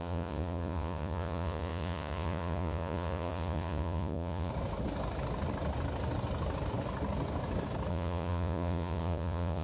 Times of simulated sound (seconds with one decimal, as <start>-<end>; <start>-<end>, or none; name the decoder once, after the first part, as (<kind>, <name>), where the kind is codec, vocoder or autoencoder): 0.0-4.5 (vocoder, Vocos); 7.9-9.6